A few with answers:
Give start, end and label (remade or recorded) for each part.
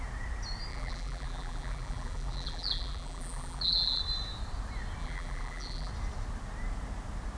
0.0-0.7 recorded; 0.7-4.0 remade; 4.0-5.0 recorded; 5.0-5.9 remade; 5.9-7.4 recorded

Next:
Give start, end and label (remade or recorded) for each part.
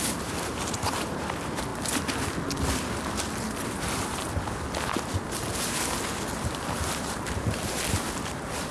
0.0-1.7 remade; 1.7-6.4 recorded; 6.4-8.7 remade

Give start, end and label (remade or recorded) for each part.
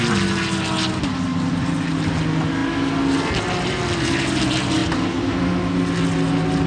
0.0-1.3 recorded; 1.3-2.1 remade; 2.1-6.7 recorded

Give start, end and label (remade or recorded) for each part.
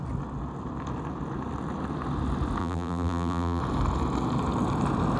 0.0-2.6 recorded; 2.6-3.6 remade; 3.6-5.2 recorded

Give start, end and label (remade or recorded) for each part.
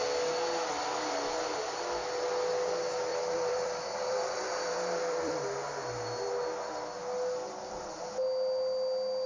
0.0-3.1 recorded; 3.1-5.4 remade; 5.4-9.3 recorded